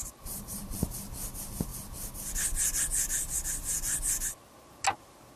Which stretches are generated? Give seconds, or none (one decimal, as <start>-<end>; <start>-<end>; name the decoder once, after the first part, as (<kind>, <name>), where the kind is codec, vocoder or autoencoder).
0.0-0.6 (vocoder, BigVGAN v2)